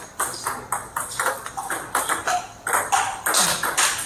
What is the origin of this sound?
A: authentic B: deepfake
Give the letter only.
B